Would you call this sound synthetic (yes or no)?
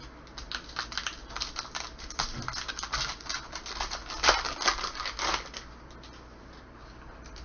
no